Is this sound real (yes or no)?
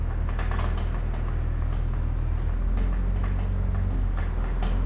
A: yes